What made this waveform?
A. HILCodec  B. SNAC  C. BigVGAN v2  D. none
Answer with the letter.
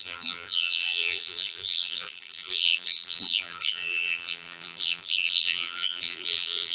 C